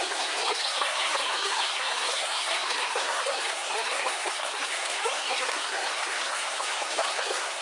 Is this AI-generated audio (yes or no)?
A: yes